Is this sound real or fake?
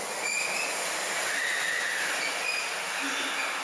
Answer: real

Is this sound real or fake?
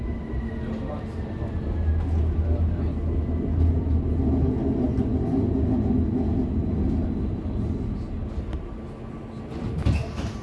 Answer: real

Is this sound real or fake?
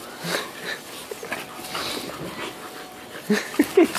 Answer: real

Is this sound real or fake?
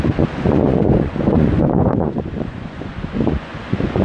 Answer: fake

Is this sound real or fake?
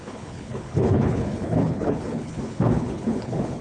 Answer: fake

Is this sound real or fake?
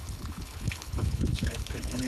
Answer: fake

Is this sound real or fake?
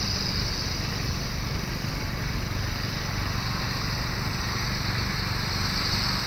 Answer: real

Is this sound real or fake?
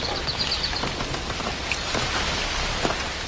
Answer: real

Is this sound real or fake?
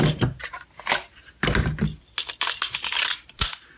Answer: real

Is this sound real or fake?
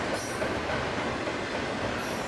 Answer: real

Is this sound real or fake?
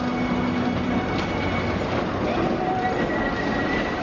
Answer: real